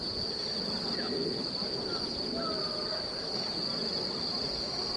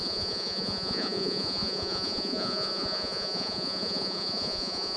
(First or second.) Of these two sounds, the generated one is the second